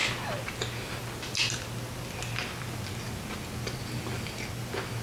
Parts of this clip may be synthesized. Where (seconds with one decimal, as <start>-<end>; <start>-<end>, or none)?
none